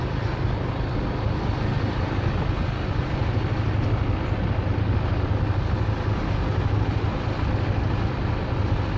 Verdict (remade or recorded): recorded